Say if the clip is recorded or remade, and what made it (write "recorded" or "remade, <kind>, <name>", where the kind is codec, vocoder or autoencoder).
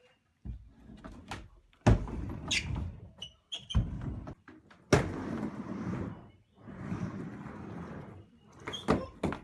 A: recorded